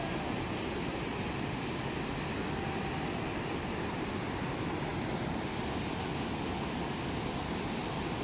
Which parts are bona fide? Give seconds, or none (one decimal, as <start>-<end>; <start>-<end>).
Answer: 0.0-8.2